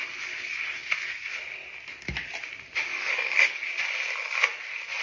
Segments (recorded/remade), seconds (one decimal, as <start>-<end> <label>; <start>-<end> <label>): 0.0-2.9 recorded; 2.9-3.6 remade; 3.6-5.0 recorded